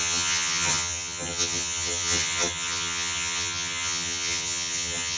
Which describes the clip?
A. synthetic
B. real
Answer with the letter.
A